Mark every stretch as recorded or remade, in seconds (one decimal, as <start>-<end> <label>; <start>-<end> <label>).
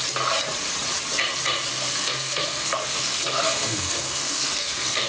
0.0-1.7 recorded; 1.7-5.1 remade